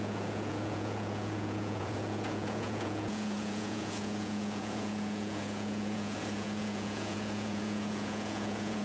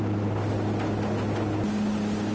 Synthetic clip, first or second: first